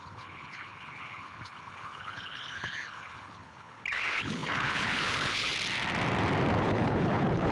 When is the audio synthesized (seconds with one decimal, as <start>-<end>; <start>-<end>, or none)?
0.0-5.5; 6.6-7.5